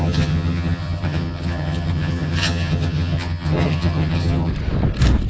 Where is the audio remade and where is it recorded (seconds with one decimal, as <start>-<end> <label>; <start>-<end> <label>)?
0.0-4.5 remade; 4.5-5.3 recorded